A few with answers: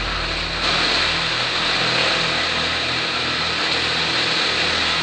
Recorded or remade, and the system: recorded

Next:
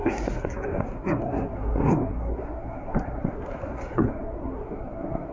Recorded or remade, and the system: remade, codec, SNAC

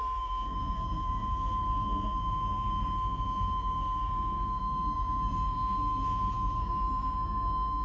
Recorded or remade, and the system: remade, codec, SNAC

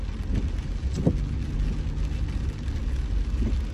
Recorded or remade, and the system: recorded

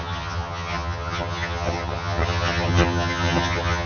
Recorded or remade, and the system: remade, vocoder, HiFi-GAN